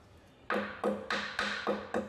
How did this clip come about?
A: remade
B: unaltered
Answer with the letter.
B